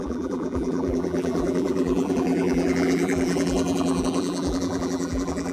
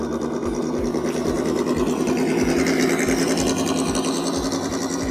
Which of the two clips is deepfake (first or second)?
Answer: first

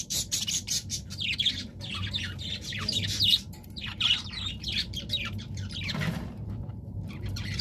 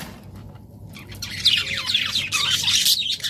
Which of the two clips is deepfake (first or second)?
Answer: first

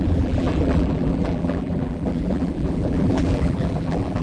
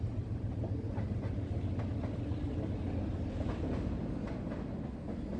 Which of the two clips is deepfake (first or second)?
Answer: first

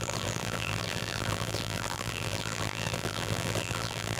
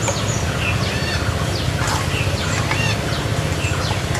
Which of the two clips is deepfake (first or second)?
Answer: first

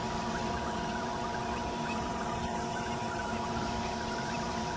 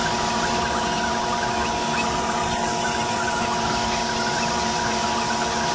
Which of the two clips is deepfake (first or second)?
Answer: first